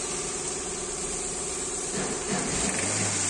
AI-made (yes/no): no